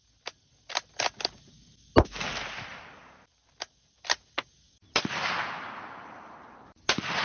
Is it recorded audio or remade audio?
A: recorded